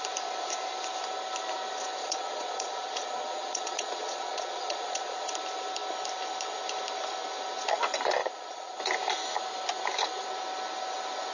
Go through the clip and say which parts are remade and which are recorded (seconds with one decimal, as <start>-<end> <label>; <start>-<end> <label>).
0.0-2.0 recorded; 2.0-5.3 remade; 5.3-8.2 recorded; 8.2-8.8 remade; 8.8-11.3 recorded